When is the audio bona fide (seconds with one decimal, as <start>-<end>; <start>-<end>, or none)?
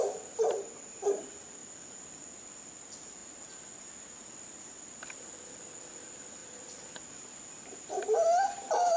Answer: 0.0-9.0